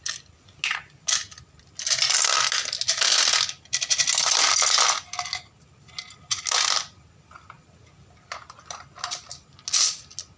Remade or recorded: recorded